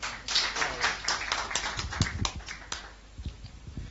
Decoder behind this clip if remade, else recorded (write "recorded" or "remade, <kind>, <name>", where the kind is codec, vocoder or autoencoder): recorded